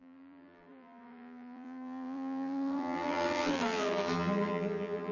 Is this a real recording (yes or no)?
no